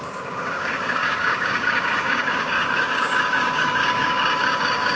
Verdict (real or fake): fake